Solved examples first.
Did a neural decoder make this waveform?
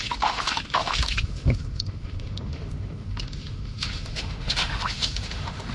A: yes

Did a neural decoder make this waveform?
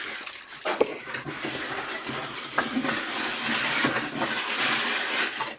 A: no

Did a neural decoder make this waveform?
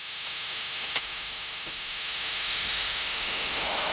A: yes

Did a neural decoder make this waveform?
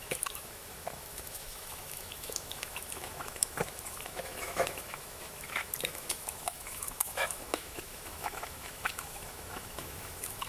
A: yes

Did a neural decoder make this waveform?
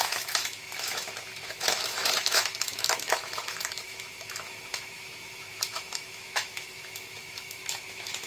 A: yes